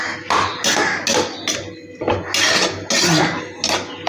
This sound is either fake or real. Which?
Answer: real